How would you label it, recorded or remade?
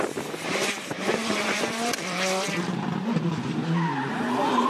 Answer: remade